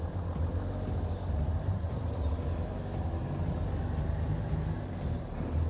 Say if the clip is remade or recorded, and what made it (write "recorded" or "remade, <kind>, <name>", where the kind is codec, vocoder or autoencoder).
recorded